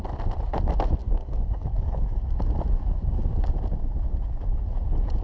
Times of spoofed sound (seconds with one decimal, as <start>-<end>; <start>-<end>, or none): 1.0-2.2